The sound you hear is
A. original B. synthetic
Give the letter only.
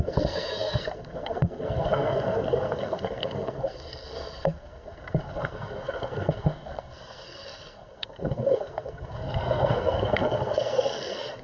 B